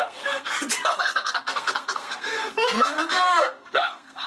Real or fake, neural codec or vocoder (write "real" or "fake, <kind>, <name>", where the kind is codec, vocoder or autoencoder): fake, codec, SNAC